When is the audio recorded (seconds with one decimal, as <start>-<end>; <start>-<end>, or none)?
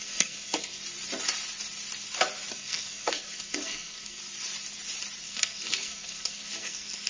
0.8-2.5; 4.2-5.2